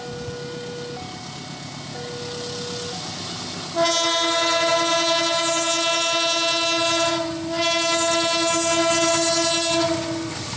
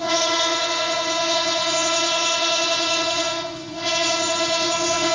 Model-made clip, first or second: second